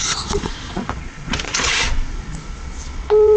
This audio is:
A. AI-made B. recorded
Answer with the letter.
A